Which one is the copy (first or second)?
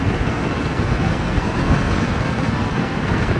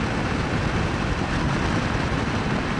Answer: first